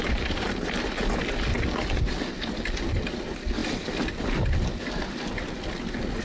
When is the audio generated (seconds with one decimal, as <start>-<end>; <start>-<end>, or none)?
none